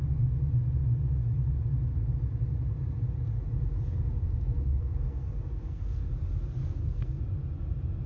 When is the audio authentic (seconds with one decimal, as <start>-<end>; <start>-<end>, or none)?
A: 0.0-4.2; 6.1-6.6; 7.2-8.1